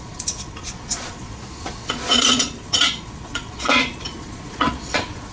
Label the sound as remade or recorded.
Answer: remade